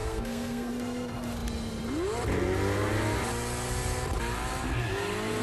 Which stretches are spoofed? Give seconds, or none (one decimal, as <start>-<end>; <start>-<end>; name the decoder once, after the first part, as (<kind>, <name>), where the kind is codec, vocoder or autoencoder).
0.0-0.7 (codec, SNAC)